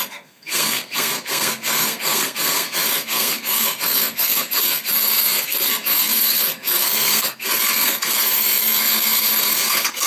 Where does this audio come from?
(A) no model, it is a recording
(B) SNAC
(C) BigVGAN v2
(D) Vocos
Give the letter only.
B